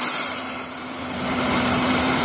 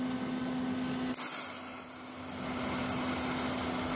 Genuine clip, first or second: second